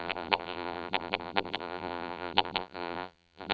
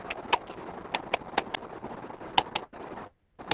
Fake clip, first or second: first